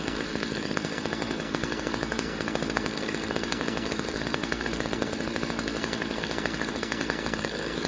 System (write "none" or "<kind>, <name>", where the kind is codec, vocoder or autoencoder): codec, SNAC